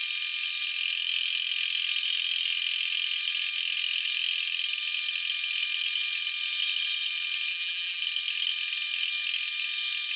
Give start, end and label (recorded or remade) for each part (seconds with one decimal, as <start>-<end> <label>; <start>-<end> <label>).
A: 0.0-7.5 recorded; 7.5-8.0 remade; 8.0-10.2 recorded